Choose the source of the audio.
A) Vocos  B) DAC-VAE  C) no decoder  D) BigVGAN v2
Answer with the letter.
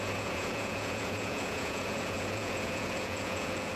A